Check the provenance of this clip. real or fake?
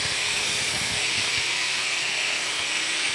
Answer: fake